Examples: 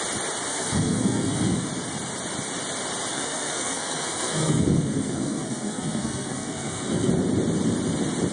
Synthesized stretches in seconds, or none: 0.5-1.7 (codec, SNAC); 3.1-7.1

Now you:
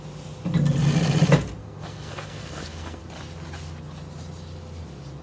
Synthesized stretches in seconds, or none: 1.6-3.0 (codec, SNAC)

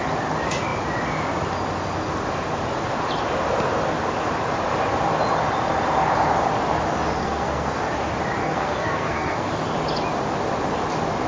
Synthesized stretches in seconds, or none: 7.2-7.8 (codec, SNAC); 8.4-9.5

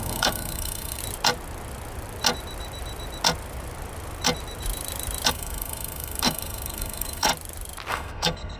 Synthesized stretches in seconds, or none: 0.0-1.0 (codec, SNAC); 5.3-7.3; 7.9-8.6

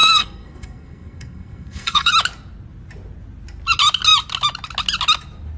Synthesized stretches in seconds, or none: 0.0-2.1 (codec, SNAC)